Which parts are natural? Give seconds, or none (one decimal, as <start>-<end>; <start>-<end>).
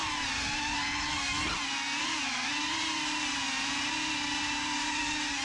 0.8-2.0; 5.0-5.4